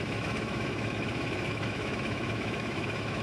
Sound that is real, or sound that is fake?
fake